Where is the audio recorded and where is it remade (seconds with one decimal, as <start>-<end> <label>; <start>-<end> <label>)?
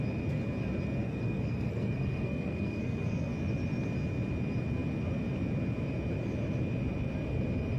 0.0-1.0 recorded; 1.0-3.3 remade; 3.3-7.8 recorded